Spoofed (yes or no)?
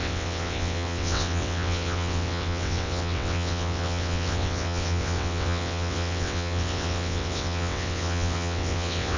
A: yes